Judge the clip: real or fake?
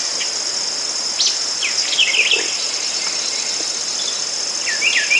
real